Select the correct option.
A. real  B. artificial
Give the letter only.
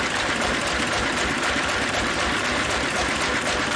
A